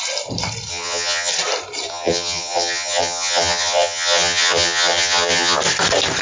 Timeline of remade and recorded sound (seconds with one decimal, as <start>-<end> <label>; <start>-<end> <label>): 0.0-0.7 recorded; 0.7-1.3 remade; 1.3-1.9 recorded; 1.9-5.6 remade; 5.6-6.2 recorded